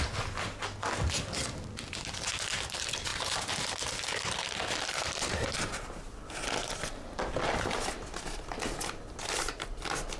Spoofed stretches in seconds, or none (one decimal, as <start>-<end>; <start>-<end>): 3.1-7.9